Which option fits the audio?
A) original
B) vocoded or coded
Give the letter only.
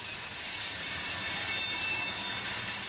A